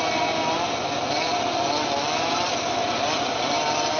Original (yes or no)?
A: yes